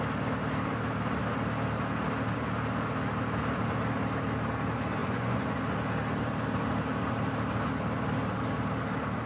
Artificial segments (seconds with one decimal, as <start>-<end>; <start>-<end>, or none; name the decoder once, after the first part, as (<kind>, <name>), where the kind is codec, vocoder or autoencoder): 5.0-5.6 (vocoder, Vocos)